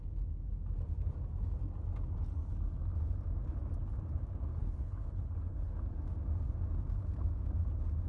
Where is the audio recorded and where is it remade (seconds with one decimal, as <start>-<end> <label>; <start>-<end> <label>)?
0.0-4.5 recorded; 4.5-5.7 remade; 5.7-8.1 recorded